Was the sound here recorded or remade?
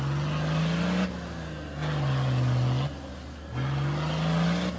recorded